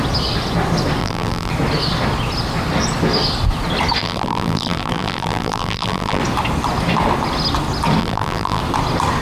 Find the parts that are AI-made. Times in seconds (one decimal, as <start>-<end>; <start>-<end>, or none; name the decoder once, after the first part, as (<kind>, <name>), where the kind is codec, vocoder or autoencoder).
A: 1.0-1.5 (vocoder, BigVGAN v2); 4.0-6.2; 8.0-8.6